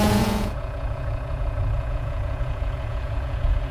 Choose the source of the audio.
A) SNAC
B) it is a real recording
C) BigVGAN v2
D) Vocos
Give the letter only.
D